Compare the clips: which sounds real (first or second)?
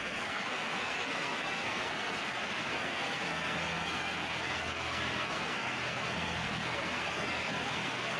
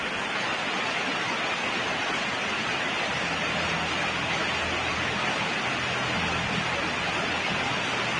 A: second